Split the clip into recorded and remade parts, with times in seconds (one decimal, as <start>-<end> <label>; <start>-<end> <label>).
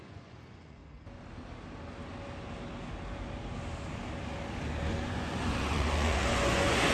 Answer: 0.0-0.8 remade; 0.8-4.9 recorded; 4.9-6.9 remade